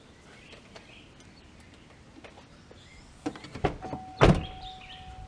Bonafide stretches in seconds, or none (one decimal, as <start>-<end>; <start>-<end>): 0.0-5.3